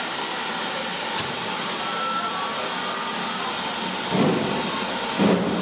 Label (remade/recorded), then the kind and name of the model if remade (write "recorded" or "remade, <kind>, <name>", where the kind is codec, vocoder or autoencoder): recorded